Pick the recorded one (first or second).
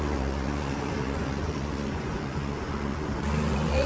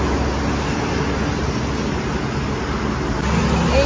second